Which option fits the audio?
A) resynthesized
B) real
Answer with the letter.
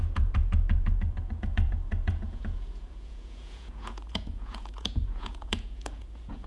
A